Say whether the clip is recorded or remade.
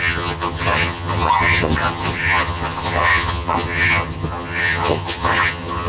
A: remade